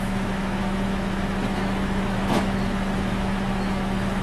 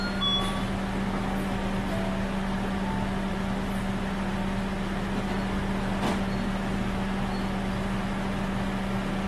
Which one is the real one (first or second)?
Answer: second